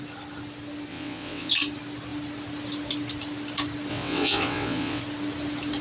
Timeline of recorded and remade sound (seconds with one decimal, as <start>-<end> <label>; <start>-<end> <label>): 0.0-0.9 recorded; 0.9-1.5 remade; 1.5-3.9 recorded; 3.9-5.0 remade; 5.0-5.8 recorded

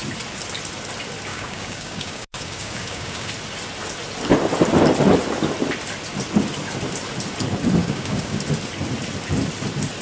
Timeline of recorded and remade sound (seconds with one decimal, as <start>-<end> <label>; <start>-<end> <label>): 0.0-1.3 recorded; 1.3-3.3 remade; 3.3-7.8 recorded; 7.8-8.4 remade; 8.4-10.0 recorded